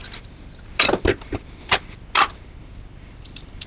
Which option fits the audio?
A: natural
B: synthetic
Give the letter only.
A